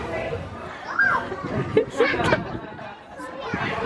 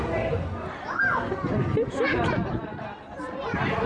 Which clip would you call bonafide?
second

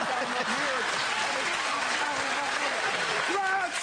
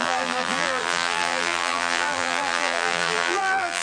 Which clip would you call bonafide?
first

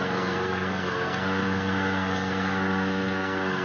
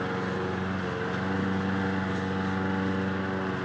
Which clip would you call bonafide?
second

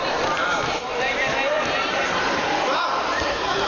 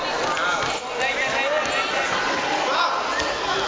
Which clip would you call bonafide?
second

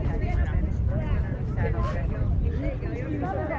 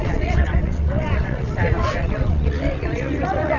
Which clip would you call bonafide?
first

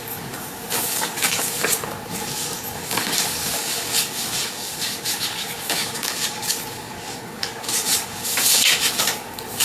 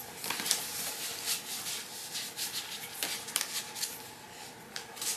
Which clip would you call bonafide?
second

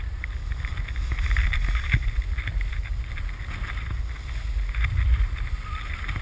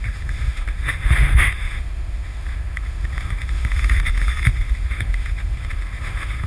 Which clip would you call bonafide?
first